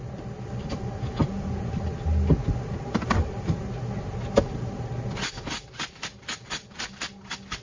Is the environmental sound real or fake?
real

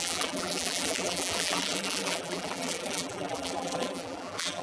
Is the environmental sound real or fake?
fake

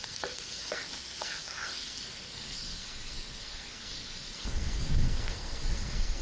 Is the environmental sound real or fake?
fake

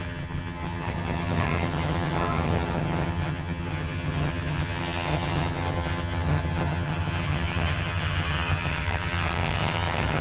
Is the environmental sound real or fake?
fake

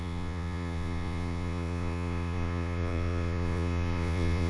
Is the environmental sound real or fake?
fake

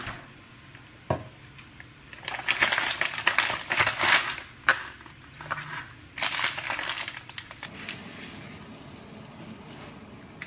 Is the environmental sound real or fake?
real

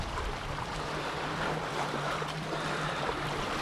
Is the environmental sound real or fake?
fake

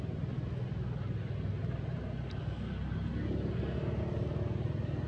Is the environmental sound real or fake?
real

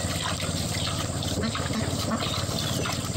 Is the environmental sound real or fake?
real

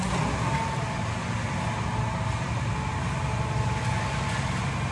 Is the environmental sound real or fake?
real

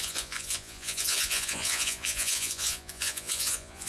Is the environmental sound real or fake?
fake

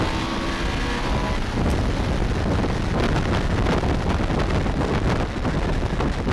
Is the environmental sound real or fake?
real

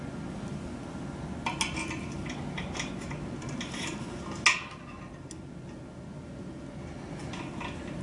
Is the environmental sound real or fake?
real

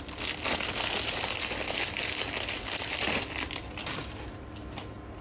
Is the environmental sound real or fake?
real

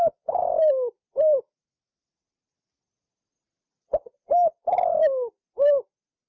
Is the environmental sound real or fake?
real